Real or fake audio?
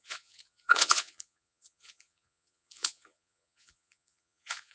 fake